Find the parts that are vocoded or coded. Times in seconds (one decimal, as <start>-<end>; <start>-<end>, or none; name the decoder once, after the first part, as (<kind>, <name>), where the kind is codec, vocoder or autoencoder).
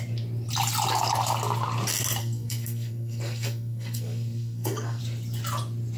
2.2-5.0 (codec, SNAC)